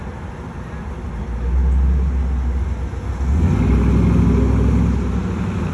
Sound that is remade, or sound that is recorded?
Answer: recorded